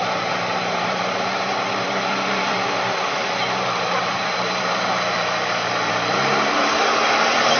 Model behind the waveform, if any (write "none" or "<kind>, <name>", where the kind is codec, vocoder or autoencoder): vocoder, BigVGAN v2